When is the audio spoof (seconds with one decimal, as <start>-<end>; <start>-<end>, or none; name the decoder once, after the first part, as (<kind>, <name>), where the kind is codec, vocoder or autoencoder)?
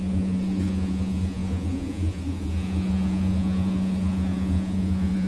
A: 0.0-5.3 (vocoder, Vocos)